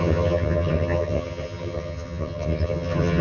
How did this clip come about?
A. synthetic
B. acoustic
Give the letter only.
A